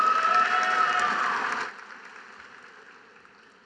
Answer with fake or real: real